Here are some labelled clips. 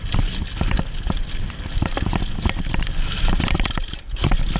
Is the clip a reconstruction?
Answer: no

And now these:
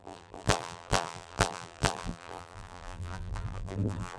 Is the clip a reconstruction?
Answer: yes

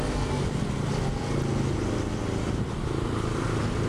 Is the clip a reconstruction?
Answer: no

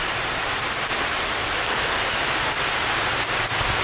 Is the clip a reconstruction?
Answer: no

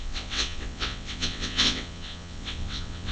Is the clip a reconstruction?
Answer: yes